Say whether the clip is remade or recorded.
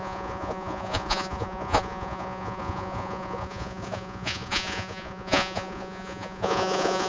remade